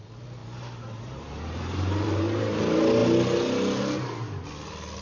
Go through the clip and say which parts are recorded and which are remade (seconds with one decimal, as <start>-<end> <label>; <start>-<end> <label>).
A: 0.0-0.4 recorded; 0.4-2.6 remade; 2.6-5.0 recorded